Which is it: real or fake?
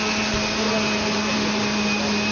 real